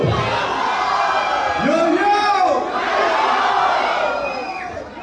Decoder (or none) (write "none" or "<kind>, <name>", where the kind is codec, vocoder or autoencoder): none